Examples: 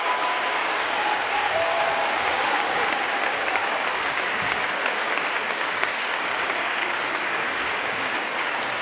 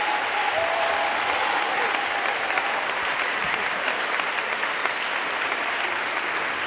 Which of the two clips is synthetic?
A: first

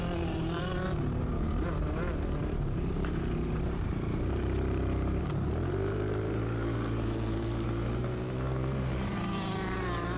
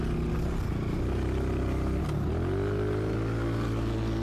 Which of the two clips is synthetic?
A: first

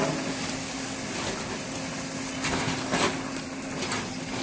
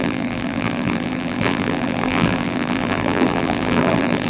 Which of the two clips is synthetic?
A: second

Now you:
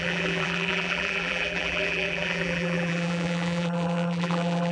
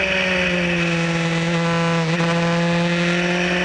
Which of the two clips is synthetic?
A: first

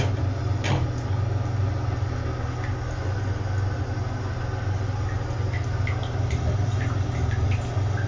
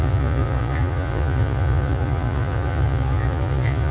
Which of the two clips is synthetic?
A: second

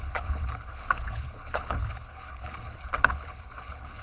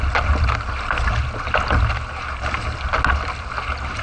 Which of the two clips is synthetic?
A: first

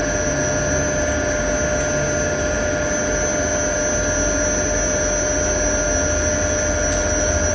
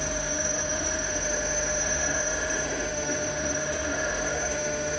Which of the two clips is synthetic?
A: second